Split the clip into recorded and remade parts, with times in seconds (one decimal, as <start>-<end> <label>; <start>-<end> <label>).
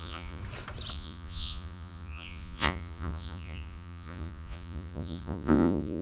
0.0-0.4 remade; 0.4-0.9 recorded; 0.9-6.0 remade